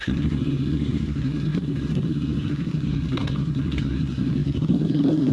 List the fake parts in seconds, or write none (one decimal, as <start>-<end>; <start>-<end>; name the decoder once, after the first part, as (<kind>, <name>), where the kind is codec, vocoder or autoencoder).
0.0-5.3 (codec, SNAC)